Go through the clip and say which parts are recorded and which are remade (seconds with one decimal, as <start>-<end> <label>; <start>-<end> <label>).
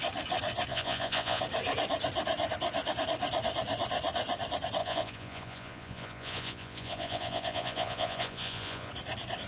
0.0-0.7 recorded; 0.7-1.4 remade; 1.4-4.8 recorded; 4.8-8.9 remade; 8.9-9.5 recorded